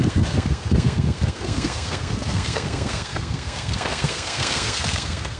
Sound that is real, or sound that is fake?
fake